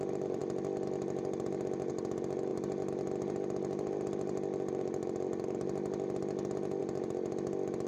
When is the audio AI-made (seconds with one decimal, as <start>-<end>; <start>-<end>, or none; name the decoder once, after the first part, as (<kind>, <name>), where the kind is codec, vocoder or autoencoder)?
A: none